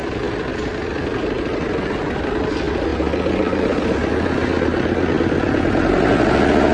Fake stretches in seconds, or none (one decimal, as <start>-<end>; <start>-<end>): none